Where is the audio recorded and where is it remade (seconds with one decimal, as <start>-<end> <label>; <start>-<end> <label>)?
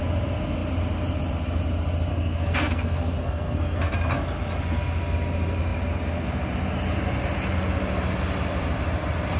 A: 0.0-2.1 recorded; 2.1-3.9 remade; 3.9-9.4 recorded